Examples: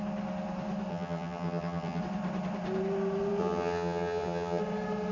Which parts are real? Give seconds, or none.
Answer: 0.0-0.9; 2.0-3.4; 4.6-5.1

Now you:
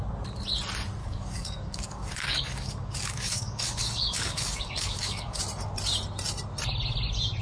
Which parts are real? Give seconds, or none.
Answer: 0.0-1.0; 5.4-7.4

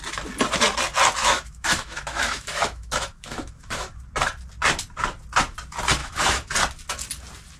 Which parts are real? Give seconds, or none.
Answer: 0.0-1.2; 4.0-6.0; 6.5-7.6

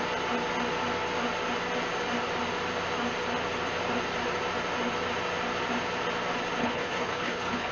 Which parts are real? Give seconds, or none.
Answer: 0.0-6.6

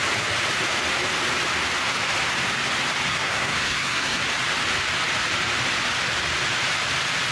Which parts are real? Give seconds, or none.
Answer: 0.0-3.1; 4.2-7.3

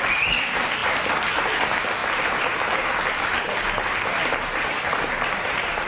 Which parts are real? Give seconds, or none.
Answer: 0.0-5.9